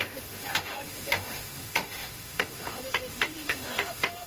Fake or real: fake